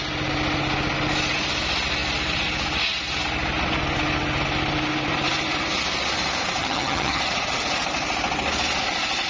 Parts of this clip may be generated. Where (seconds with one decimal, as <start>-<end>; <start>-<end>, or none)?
6.6-7.2